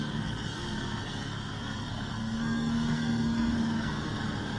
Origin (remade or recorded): remade